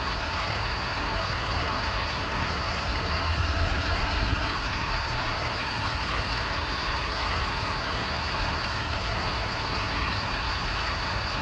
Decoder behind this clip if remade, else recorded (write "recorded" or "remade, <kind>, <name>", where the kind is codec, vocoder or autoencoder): remade, codec, SNAC